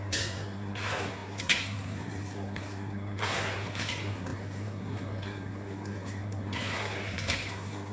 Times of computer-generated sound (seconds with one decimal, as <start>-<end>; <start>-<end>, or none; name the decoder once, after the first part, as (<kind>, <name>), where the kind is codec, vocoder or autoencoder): 0.0-7.9 (codec, SNAC)

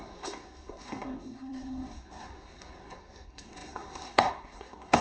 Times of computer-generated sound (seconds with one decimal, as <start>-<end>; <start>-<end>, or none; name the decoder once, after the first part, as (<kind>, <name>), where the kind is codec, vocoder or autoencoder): 0.0-5.0 (codec, SNAC)

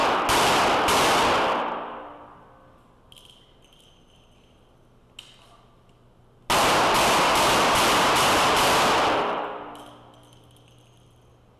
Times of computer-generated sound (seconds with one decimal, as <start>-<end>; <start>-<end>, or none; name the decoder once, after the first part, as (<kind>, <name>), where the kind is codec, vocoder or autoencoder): none